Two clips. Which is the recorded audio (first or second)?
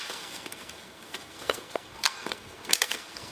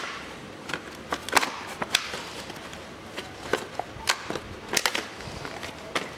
second